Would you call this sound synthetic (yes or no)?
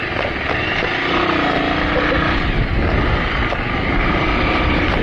no